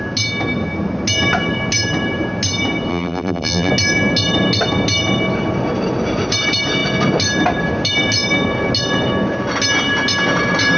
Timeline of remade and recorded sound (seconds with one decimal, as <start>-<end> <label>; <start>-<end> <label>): 0.0-2.9 recorded; 2.9-3.7 remade; 3.7-10.8 recorded

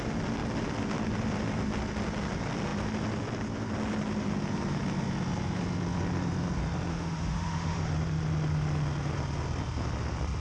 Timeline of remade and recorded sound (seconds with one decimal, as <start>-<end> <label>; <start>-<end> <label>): 0.0-6.9 recorded; 6.9-7.9 remade; 7.9-10.4 recorded

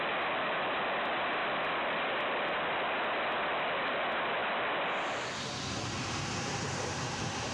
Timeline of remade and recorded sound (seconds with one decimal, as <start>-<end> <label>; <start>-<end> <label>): 0.0-7.5 recorded

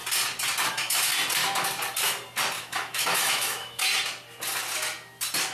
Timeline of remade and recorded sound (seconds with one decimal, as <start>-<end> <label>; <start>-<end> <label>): 0.0-0.7 recorded; 0.7-1.1 remade; 1.1-2.6 recorded; 2.6-3.9 remade; 3.9-5.5 recorded